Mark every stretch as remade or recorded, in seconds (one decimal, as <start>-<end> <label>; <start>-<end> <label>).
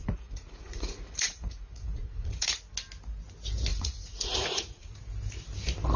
0.0-2.5 remade; 2.5-3.7 recorded; 3.7-5.0 remade; 5.0-6.0 recorded